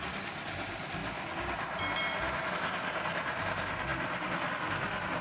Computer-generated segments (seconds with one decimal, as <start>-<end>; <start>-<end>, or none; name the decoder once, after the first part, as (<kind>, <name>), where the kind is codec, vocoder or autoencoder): none